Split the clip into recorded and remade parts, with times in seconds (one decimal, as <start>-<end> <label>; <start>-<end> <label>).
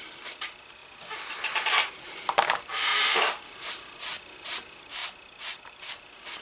0.0-0.8 remade; 0.8-1.9 recorded; 1.9-6.4 remade